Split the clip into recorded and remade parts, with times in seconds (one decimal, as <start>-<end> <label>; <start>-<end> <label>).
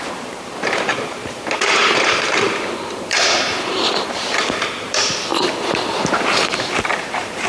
0.0-7.5 remade